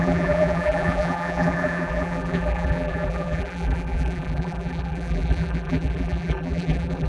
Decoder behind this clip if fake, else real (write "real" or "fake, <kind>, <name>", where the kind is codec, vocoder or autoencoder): fake, vocoder, BigVGAN v2